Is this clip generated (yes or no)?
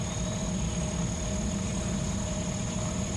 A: no